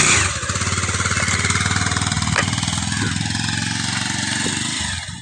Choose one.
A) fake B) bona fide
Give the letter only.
B